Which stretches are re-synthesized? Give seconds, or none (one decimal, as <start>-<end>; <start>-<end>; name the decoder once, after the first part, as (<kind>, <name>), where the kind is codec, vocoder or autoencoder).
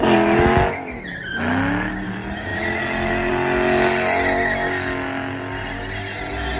none